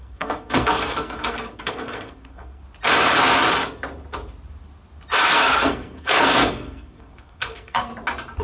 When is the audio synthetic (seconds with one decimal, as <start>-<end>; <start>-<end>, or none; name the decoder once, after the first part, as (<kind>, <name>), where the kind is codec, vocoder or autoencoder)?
0.0-2.6 (codec, SNAC); 5.3-7.9